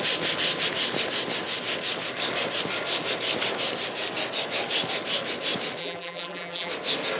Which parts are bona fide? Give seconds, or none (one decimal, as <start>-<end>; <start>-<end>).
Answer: 0.0-5.8; 6.7-7.2